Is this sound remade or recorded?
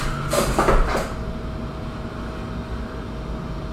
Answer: recorded